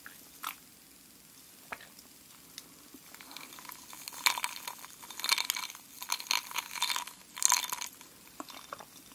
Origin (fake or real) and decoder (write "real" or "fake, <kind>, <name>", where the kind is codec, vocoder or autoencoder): real